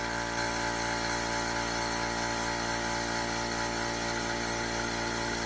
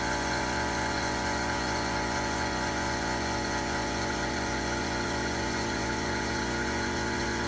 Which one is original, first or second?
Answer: first